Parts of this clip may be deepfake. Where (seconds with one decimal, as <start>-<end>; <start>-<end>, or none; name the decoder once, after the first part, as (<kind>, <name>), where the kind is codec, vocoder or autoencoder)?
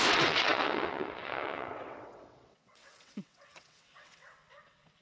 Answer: 0.0-5.0 (vocoder, WaveNeXt)